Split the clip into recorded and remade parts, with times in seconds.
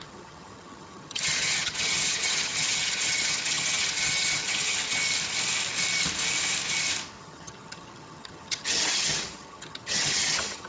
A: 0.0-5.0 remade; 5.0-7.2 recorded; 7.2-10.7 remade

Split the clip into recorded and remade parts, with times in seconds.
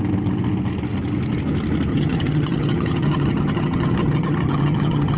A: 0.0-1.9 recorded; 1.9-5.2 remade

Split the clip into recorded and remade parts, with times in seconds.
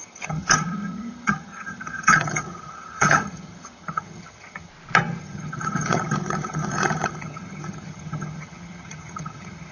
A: 0.0-4.7 remade; 4.7-5.2 recorded; 5.2-9.7 remade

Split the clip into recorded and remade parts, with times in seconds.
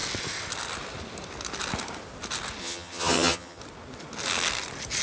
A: 0.0-2.6 recorded; 2.6-3.6 remade; 3.6-5.0 recorded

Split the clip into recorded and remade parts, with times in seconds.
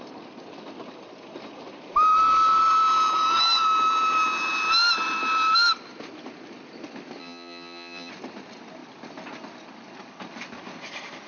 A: 0.0-7.2 recorded; 7.2-8.1 remade; 8.1-11.3 recorded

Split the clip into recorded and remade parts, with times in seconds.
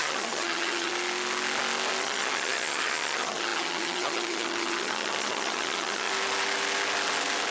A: 0.0-0.9 remade; 0.9-2.0 recorded; 2.0-6.1 remade; 6.1-7.5 recorded